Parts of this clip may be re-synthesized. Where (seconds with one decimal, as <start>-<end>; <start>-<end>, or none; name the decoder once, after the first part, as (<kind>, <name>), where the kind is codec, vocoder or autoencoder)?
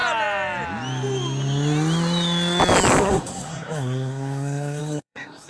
3.0-5.5 (codec, SNAC)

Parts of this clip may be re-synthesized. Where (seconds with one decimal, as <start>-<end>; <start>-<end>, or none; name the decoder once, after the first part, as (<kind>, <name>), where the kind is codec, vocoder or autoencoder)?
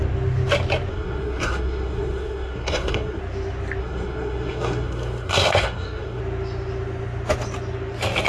0.9-3.2 (codec, SNAC); 3.8-6.2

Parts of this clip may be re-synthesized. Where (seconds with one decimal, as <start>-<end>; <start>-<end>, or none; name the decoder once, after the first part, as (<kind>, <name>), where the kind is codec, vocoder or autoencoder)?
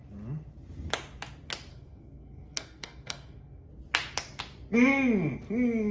1.7-3.7 (codec, SNAC)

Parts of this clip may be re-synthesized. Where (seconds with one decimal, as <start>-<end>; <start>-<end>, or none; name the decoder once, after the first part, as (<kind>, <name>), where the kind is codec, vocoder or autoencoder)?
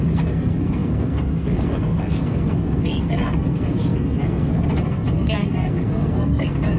0.0-6.8 (codec, SNAC)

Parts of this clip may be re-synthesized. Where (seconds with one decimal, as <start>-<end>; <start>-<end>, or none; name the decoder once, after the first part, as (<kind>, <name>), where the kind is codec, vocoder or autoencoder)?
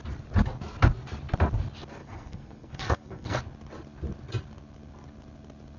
2.0-3.4 (codec, SNAC)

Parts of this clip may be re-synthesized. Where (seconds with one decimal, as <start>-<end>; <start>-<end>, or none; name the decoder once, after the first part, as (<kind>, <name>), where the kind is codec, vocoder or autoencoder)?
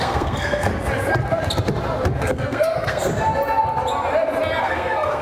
0.0-0.7 (codec, SNAC); 2.2-3.1; 4.6-5.2